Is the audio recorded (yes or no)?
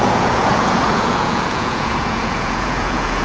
no